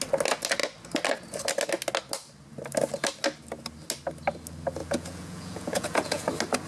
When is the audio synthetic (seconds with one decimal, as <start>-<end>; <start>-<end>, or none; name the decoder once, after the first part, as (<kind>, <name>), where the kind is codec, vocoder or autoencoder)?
4.8-6.3 (vocoder, Vocos)